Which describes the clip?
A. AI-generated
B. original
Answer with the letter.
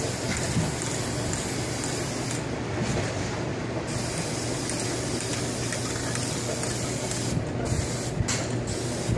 B